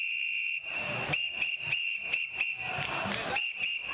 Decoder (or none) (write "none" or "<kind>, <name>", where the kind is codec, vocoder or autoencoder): vocoder, BigVGAN v2